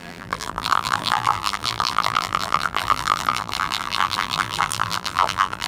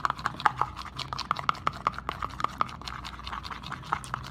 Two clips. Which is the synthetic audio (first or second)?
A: first